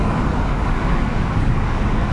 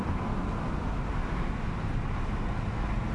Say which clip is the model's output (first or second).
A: first